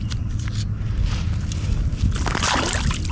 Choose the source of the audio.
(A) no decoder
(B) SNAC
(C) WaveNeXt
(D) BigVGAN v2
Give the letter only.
A